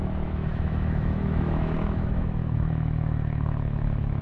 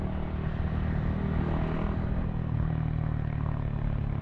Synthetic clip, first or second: first